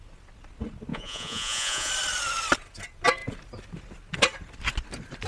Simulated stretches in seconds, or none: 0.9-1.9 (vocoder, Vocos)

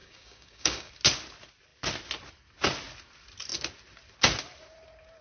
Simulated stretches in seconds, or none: 0.0-0.9 (codec, DAC)